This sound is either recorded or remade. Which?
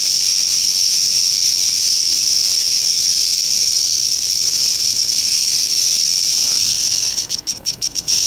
remade